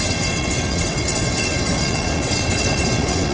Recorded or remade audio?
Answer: remade